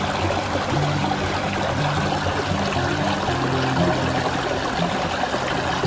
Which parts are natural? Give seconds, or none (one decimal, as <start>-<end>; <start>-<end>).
0.0-5.9